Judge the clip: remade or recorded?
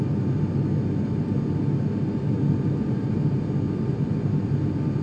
recorded